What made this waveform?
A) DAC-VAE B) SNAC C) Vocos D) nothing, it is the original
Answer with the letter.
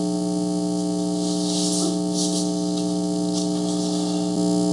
D